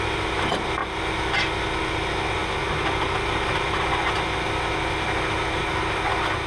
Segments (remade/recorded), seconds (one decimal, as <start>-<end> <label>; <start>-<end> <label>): 0.0-6.5 recorded